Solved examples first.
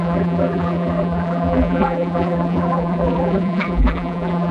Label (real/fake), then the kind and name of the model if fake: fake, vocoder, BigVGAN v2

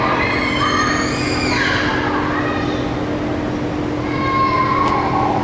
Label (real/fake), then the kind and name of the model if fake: real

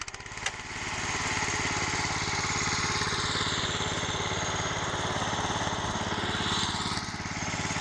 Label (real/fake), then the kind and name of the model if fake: real